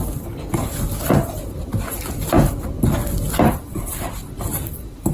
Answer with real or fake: real